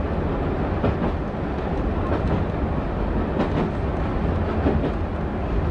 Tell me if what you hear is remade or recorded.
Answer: recorded